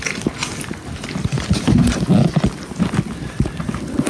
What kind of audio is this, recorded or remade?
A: recorded